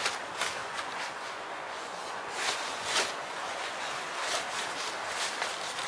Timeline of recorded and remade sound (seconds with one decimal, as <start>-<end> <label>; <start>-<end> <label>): 0.0-0.6 recorded; 0.6-4.1 remade; 4.1-5.9 recorded